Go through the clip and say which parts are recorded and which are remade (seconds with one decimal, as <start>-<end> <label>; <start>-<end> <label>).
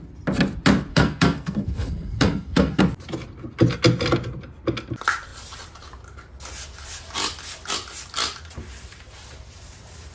0.0-0.9 recorded; 0.9-2.8 remade; 2.8-10.1 recorded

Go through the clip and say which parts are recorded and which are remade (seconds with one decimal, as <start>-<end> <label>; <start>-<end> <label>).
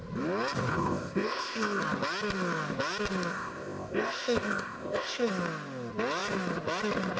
0.0-0.7 recorded; 0.7-1.8 remade; 1.8-3.3 recorded; 3.3-5.3 remade; 5.3-7.2 recorded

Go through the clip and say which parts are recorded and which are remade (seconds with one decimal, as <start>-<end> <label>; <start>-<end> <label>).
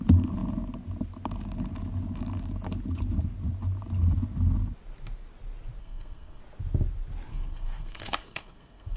0.0-5.8 recorded; 5.8-6.4 remade; 6.4-7.3 recorded; 7.3-9.0 remade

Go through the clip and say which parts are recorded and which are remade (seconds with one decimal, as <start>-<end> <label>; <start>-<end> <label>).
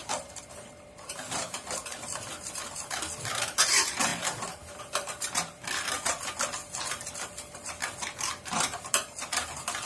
0.0-4.1 remade; 4.1-4.8 recorded; 4.8-9.9 remade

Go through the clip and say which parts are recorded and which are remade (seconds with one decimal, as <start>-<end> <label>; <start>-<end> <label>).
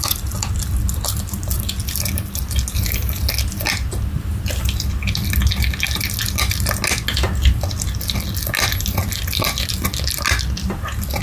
0.0-11.2 recorded